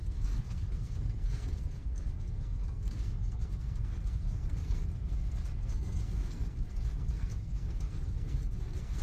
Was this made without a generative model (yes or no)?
no